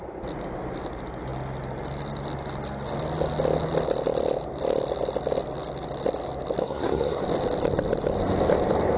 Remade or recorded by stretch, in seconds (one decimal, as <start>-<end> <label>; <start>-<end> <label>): 0.0-6.6 recorded; 6.6-7.2 remade; 7.2-9.0 recorded